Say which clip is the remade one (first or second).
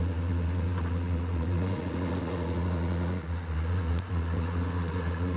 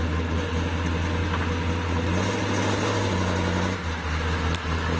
first